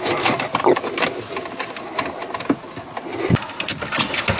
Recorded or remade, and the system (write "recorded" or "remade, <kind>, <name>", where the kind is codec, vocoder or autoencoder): recorded